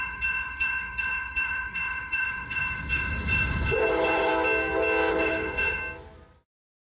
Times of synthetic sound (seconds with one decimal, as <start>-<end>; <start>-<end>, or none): 0.0-4.3; 5.1-5.8